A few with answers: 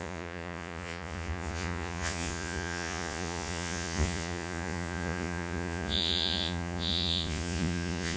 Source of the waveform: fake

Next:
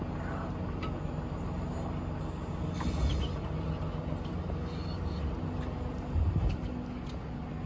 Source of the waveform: real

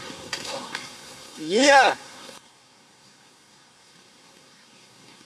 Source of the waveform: fake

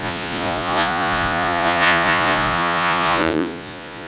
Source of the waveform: fake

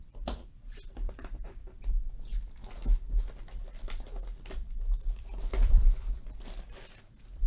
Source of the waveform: fake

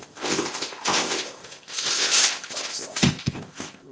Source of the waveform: fake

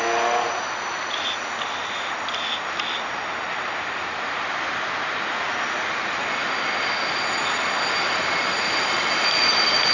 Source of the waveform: real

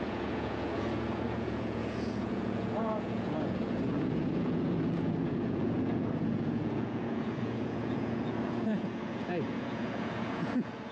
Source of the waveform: fake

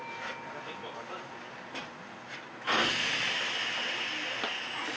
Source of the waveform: real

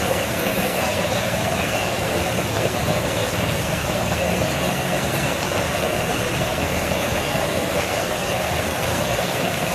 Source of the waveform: fake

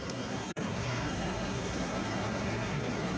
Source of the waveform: fake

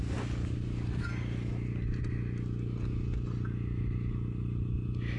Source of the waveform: real